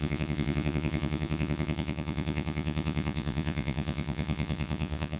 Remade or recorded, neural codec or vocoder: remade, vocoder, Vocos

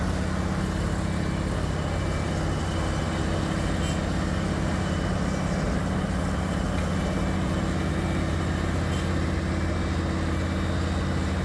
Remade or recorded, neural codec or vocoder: recorded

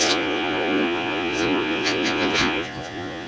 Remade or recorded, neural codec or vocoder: remade, vocoder, Vocos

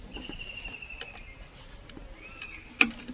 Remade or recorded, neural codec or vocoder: recorded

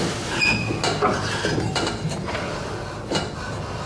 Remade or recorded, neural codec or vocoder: recorded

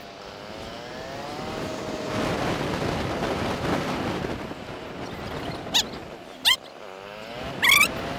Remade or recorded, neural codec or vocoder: recorded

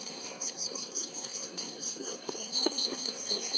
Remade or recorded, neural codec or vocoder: remade, codec, SNAC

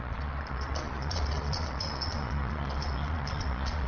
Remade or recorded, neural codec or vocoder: remade, vocoder, Vocos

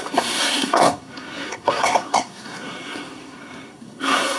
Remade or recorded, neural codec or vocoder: remade, codec, SNAC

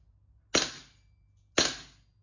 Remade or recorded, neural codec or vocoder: recorded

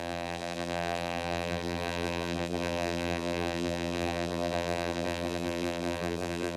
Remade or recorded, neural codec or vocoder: remade, vocoder, BigVGAN v2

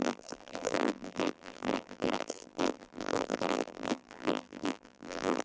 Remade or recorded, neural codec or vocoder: remade, vocoder, BigVGAN v2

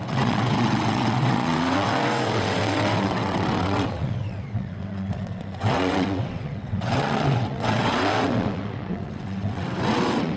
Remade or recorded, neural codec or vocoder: remade, vocoder, WaveNeXt